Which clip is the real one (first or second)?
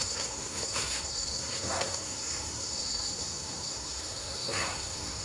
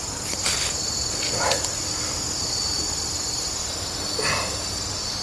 second